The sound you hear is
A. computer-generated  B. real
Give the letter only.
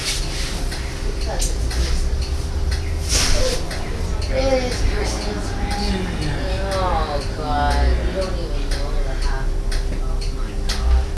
B